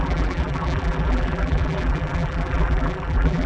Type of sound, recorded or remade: remade